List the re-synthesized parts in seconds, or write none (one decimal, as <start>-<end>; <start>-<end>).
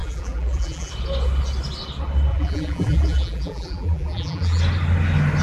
0.0-0.9; 2.3-4.6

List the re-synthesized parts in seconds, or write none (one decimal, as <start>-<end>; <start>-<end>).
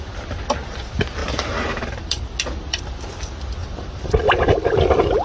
1.2-2.3; 3.6-4.3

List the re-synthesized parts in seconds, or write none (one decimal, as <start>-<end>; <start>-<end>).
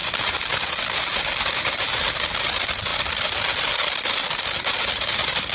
2.9-3.9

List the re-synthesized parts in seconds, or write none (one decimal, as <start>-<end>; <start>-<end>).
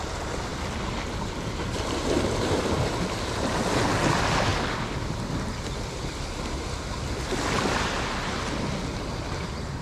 none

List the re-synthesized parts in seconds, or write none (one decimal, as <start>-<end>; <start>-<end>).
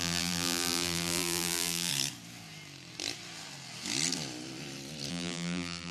0.0-1.9; 5.1-5.9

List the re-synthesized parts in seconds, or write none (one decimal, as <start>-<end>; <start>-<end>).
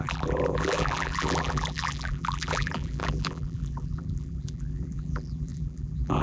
0.0-6.2